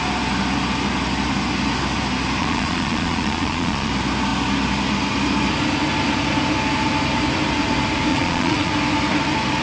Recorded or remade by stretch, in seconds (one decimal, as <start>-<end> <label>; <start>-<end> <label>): 0.0-2.4 recorded; 2.4-3.9 remade; 3.9-8.1 recorded; 8.1-8.7 remade; 8.7-9.6 recorded